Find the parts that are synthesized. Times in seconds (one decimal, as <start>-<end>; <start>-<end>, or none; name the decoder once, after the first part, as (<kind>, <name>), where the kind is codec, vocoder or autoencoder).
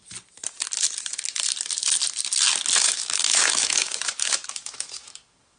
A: 2.8-5.6 (autoencoder, DAC-VAE)